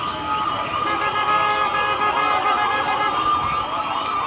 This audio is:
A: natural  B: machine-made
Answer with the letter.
A